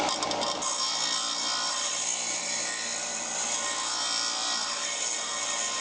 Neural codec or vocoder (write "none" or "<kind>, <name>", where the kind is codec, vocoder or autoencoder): none